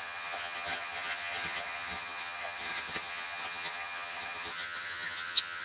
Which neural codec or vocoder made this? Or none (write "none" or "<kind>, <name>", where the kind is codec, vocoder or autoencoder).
vocoder, HiFi-GAN